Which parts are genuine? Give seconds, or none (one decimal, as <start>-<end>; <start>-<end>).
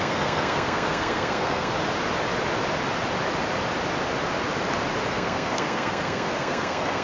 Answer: 1.7-5.1